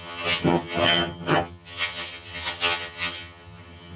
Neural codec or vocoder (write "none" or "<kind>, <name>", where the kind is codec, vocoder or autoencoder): vocoder, HiFi-GAN